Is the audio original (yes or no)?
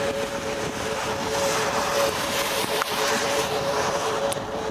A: no